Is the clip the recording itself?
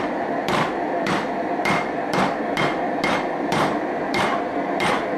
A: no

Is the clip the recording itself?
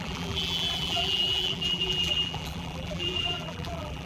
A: no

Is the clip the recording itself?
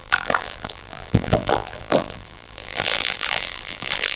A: no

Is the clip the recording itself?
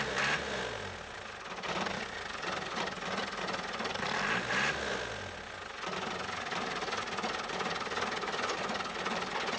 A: yes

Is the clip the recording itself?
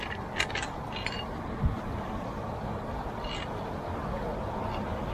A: yes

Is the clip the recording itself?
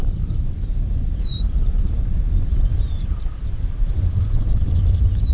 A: no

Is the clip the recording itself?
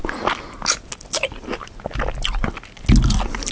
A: yes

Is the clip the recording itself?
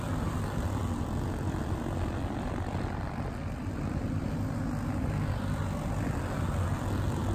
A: yes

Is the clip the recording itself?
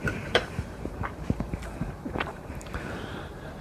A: no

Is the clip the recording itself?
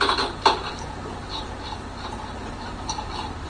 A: no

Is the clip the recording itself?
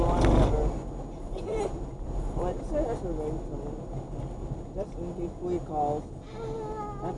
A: yes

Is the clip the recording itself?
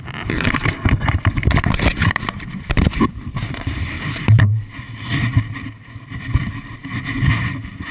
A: no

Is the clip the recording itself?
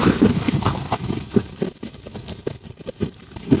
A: no